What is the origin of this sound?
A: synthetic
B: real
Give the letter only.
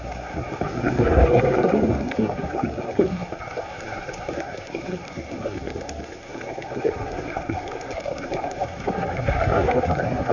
A